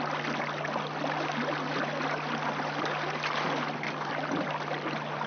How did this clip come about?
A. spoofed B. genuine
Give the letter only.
B